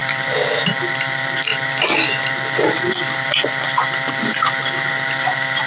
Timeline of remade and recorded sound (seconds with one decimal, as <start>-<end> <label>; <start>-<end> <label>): 0.0-5.7 recorded